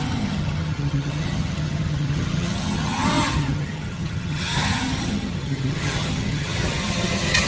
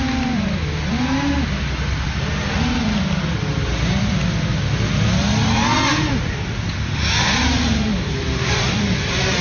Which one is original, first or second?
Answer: second